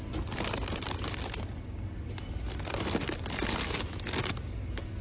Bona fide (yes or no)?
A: yes